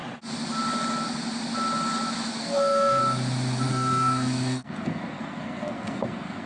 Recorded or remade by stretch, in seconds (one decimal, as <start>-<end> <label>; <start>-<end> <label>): 0.0-2.4 recorded; 2.4-3.0 remade; 3.0-3.7 recorded; 3.7-6.5 remade